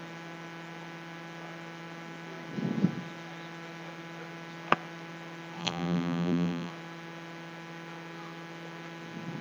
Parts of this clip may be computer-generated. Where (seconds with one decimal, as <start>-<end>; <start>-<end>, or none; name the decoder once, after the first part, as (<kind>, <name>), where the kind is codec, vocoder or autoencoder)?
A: 5.6-6.7 (vocoder, BigVGAN v2)